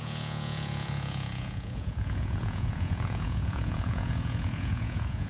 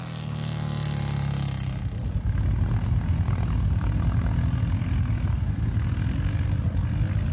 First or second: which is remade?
first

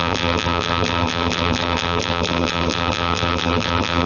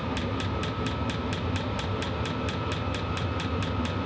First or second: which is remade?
first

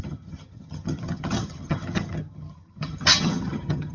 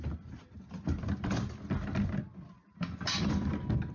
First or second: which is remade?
first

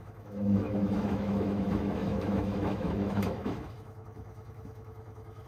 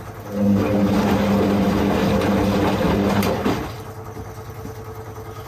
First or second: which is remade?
first